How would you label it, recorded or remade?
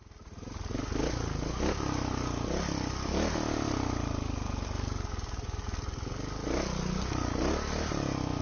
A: recorded